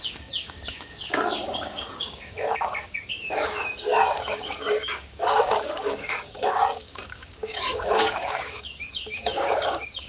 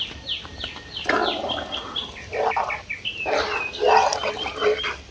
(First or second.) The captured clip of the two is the second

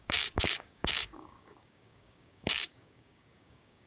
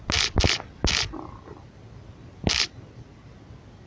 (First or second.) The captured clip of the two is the second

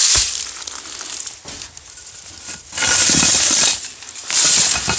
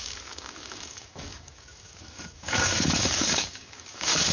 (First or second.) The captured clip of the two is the first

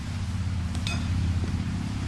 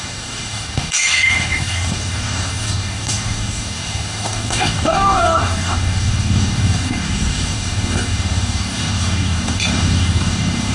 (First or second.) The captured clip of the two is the first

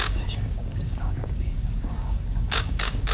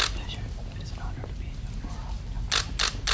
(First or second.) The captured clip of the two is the second